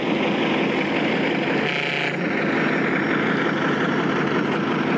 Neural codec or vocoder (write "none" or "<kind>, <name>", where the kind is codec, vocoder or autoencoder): none